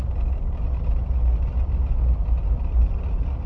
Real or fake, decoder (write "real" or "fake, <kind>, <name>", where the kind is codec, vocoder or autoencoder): real